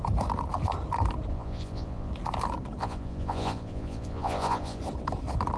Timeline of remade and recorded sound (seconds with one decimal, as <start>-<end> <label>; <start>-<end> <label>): 0.0-1.3 recorded; 1.3-2.1 remade; 2.1-2.8 recorded; 2.8-4.8 remade; 4.8-5.6 recorded